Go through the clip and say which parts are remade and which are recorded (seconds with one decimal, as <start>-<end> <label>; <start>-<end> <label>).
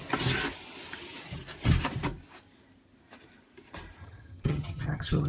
0.0-4.0 recorded; 4.0-5.3 remade